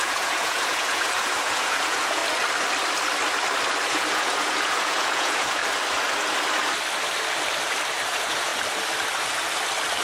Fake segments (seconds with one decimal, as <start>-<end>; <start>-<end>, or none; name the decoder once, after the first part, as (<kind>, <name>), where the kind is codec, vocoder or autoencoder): 0.0-2.2 (vocoder, Vocos); 3.9-5.6; 8.1-8.5